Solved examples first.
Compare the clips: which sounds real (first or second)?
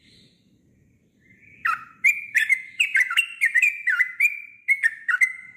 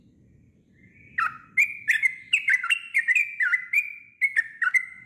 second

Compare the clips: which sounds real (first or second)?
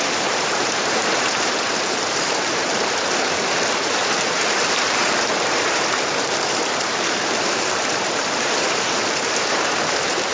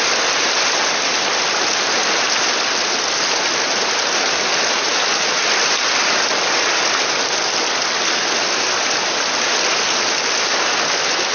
second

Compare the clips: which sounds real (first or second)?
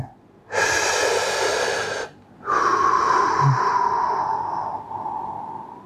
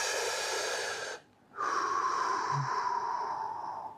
first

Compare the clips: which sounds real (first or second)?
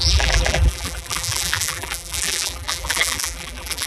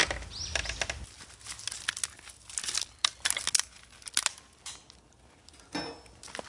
second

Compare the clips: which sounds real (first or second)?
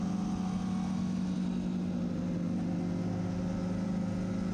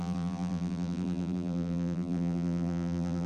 first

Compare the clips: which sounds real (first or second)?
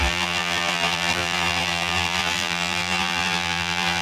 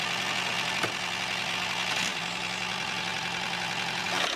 second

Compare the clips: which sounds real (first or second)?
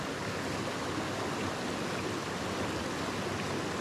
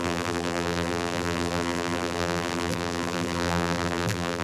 first